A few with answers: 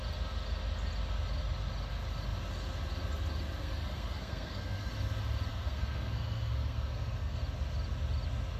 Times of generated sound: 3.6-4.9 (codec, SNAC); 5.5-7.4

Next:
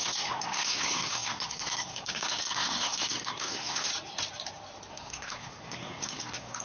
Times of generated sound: 0.0-3.9 (codec, SNAC); 4.9-6.6

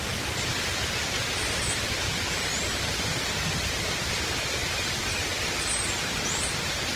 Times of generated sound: none

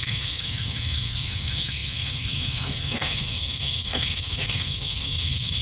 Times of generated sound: 0.0-5.6 (codec, SNAC)

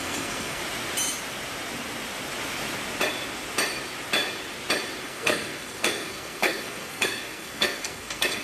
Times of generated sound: 0.0-0.6 (codec, SNAC); 5.0-8.4

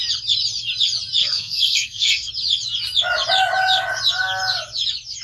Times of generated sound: 1.2-2.3 (codec, SNAC)

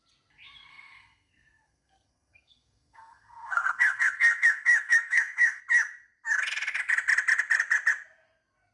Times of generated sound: 0.7-5.6 (codec, SNAC)